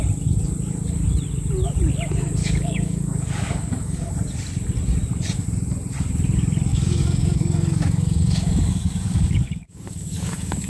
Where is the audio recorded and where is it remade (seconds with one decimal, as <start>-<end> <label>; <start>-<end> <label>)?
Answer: 0.0-2.4 recorded; 2.4-4.1 remade; 4.1-6.7 recorded; 6.7-10.7 remade